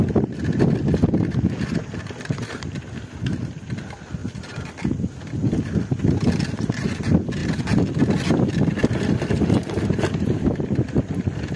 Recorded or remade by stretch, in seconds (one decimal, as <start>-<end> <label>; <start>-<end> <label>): 0.0-11.6 recorded